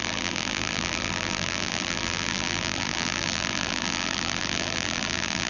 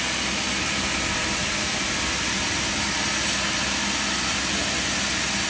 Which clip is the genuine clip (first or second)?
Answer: second